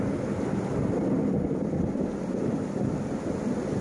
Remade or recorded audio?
recorded